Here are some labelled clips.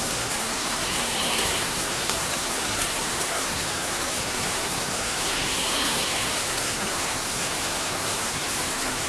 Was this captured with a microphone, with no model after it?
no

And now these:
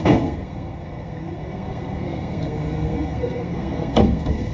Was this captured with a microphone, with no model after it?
no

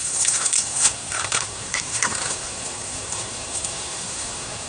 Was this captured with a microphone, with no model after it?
no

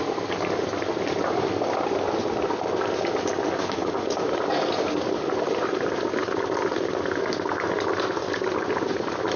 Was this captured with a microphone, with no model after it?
yes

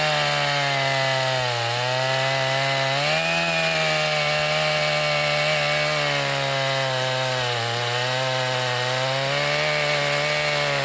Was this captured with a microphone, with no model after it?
yes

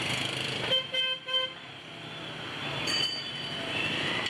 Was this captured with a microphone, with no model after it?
yes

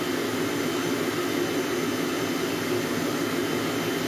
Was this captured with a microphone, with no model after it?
yes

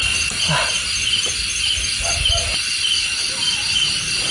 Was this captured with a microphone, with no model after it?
yes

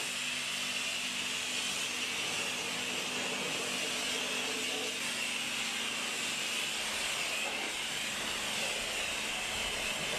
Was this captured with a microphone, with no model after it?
yes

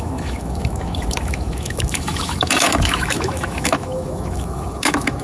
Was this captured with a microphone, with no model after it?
no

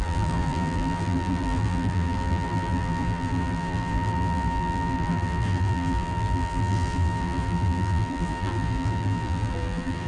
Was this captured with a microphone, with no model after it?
no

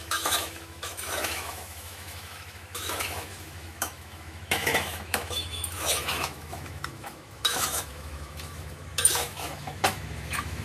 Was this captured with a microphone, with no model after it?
no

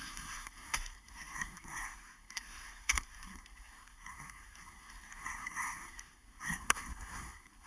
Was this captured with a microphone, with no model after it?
no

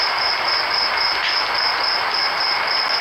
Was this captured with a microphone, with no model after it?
yes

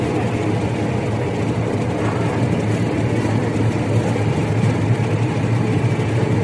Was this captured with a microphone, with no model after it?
yes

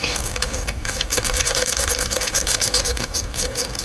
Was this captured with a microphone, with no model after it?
no